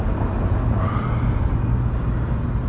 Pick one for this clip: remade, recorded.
recorded